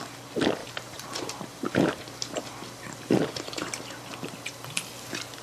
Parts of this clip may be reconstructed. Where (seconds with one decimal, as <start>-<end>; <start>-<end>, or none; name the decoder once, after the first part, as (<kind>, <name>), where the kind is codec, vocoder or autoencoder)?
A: 0.6-3.8 (vocoder, BigVGAN v2)